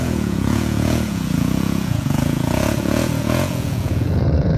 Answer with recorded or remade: remade